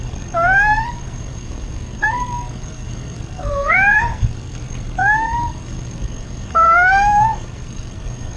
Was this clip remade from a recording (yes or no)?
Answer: yes